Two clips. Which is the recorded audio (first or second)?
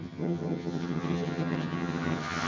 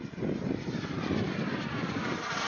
second